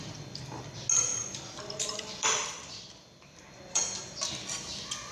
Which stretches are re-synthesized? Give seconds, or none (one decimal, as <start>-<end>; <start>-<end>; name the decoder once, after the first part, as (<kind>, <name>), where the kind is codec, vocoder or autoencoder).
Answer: 1.1-4.2 (vocoder, BigVGAN v2)